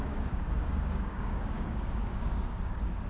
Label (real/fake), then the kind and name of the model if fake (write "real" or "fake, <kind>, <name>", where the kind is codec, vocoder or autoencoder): fake, codec, DAC